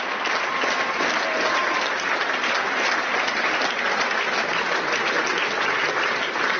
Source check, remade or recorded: recorded